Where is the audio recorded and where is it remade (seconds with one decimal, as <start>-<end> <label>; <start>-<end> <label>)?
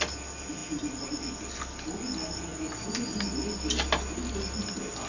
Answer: 0.0-5.1 recorded